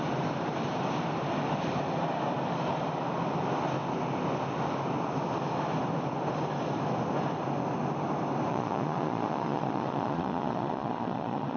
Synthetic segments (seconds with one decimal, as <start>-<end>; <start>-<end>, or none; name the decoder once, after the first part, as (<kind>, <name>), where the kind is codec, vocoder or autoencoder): 8.5-11.6 (vocoder, Vocos)